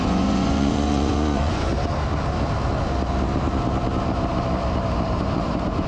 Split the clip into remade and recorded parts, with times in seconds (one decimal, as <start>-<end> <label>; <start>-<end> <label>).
0.0-1.7 remade; 1.7-5.2 recorded; 5.2-5.9 remade